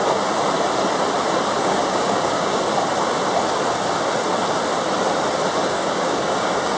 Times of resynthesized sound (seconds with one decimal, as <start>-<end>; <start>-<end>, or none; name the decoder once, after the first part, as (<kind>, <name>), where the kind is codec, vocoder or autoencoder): 1.6-2.6 (codec, DAC); 5.6-6.8